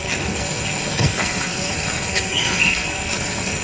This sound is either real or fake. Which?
fake